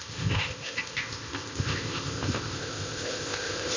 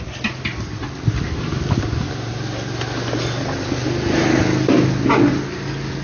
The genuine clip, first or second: second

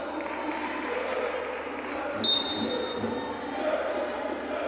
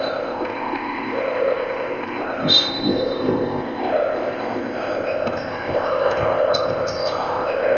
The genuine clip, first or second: first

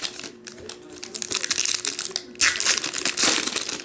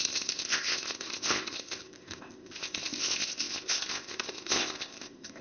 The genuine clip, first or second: first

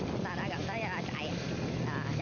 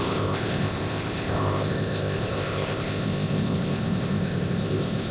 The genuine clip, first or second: first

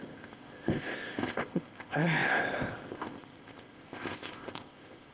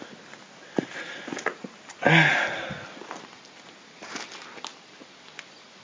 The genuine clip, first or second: second